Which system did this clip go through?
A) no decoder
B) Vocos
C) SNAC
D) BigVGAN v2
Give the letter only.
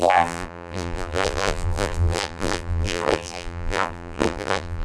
D